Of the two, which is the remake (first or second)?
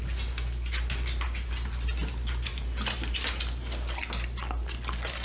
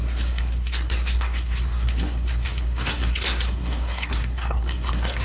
second